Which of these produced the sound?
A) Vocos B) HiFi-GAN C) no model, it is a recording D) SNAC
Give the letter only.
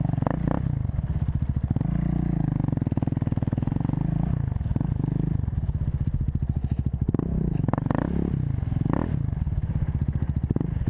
C